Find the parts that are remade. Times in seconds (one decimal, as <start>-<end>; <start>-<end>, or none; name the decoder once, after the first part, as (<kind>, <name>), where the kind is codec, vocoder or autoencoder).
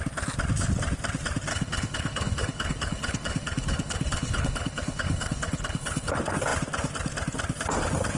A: 1.5-6.1 (codec, HILCodec)